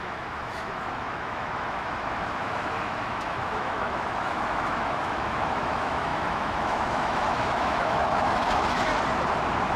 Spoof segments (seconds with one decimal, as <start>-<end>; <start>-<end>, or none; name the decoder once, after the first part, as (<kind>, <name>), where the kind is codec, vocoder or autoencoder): 0.0-8.9 (autoencoder, DAC-VAE)